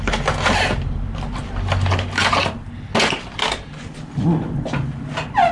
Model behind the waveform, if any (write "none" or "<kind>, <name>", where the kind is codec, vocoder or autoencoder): none